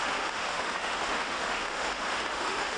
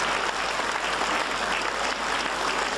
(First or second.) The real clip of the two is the second